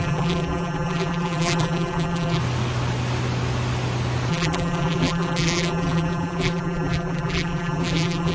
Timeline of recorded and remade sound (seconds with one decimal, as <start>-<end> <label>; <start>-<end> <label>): 0.0-2.4 remade; 2.4-4.3 recorded; 4.3-8.3 remade